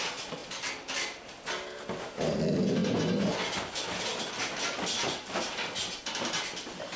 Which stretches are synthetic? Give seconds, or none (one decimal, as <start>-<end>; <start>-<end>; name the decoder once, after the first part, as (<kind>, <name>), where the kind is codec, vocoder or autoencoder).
none